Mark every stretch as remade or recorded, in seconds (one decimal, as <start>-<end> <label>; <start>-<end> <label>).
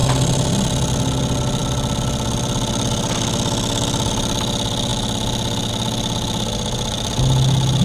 0.0-7.8 recorded